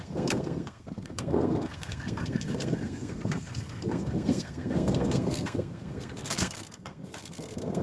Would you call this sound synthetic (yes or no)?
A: yes